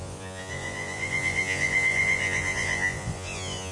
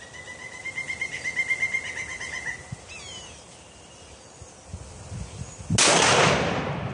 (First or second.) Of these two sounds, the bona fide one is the second